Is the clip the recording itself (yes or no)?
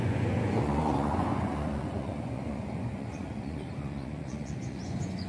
no